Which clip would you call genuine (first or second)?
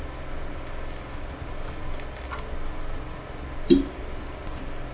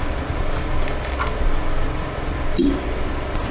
first